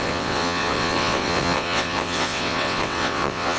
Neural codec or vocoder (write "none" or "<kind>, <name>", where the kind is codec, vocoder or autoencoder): vocoder, WaveNeXt